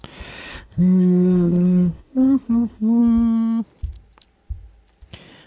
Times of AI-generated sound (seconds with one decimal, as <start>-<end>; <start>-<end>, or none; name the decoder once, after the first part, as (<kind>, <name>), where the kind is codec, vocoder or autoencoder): 0.5-3.0 (codec, SNAC)